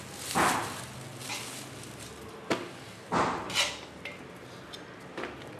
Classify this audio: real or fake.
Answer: real